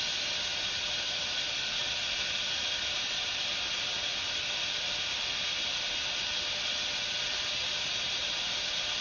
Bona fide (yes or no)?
yes